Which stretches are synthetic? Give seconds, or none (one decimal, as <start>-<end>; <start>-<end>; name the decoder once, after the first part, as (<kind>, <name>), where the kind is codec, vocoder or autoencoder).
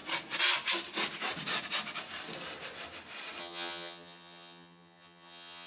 3.4-5.7 (vocoder, HiFi-GAN)